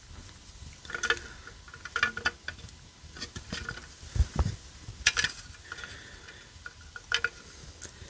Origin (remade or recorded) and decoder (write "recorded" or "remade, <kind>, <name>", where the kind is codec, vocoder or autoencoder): recorded